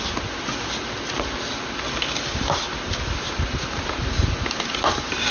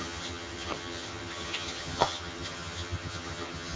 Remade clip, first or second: second